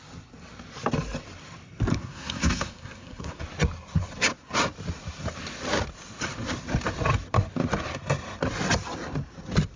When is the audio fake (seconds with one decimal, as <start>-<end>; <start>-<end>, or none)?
1.9-3.4